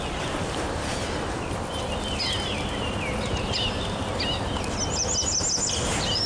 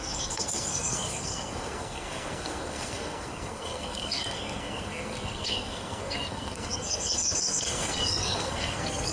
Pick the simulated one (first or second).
second